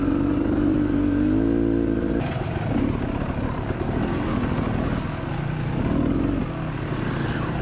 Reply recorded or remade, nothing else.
recorded